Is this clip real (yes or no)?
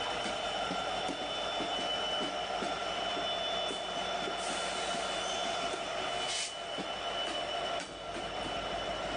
yes